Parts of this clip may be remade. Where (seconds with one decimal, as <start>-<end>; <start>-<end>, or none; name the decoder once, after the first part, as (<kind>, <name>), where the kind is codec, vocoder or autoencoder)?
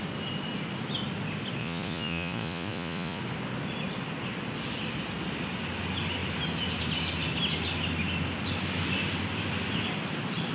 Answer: 1.6-3.2 (vocoder, Vocos)